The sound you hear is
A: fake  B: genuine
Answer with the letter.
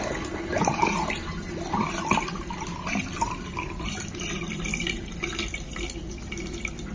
A